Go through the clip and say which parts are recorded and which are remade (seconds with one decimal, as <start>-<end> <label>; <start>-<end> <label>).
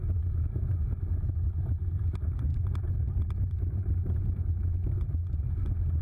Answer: 0.0-2.5 recorded; 2.5-4.5 remade; 4.5-6.0 recorded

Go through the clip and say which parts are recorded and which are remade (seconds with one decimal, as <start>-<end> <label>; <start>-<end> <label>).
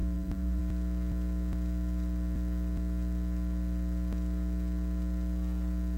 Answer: 0.0-0.6 remade; 0.6-6.0 recorded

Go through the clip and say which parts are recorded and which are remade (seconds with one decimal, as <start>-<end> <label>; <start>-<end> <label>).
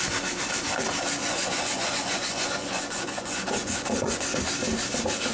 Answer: 0.0-1.2 recorded; 1.2-4.4 remade; 4.4-5.3 recorded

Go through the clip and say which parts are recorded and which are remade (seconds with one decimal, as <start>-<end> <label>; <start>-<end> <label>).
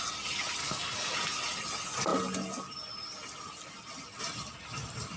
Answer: 0.0-0.6 recorded; 0.6-1.1 remade; 1.1-5.2 recorded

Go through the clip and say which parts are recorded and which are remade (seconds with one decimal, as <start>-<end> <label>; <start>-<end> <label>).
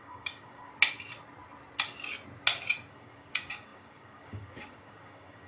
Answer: 0.0-0.7 remade; 0.7-2.9 recorded; 2.9-5.5 remade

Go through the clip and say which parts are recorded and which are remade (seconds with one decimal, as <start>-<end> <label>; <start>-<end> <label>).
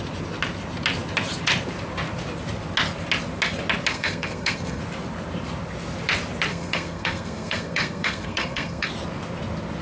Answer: 0.0-3.9 recorded; 3.9-4.8 remade; 4.8-6.5 recorded; 6.5-8.9 remade; 8.9-9.8 recorded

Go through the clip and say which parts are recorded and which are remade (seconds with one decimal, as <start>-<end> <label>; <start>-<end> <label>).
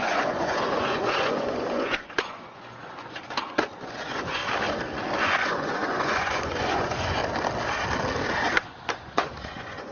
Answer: 0.0-4.4 remade; 4.4-5.2 recorded; 5.2-7.2 remade; 7.2-8.9 recorded; 8.9-9.9 remade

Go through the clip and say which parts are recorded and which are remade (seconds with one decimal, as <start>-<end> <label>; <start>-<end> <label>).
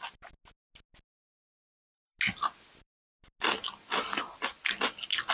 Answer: 0.0-5.3 recorded